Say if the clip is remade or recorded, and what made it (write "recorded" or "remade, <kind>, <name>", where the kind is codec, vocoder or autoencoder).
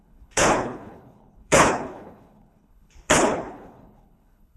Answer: remade, codec, HILCodec